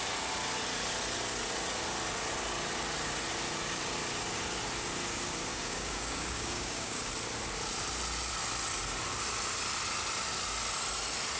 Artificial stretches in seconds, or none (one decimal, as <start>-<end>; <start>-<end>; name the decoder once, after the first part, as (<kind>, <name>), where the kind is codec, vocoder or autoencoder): 5.5-7.1 (codec, DAC)